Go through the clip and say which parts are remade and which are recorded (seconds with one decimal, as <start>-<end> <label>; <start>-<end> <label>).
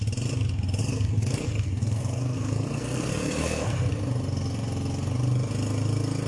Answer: 0.0-0.8 recorded; 0.8-3.9 remade; 3.9-6.3 recorded